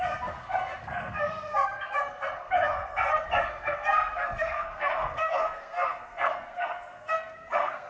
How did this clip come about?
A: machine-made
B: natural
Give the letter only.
A